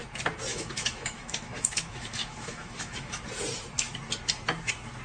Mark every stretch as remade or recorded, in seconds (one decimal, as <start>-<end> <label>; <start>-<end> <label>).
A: 0.0-0.5 recorded; 0.5-3.2 remade; 3.2-5.0 recorded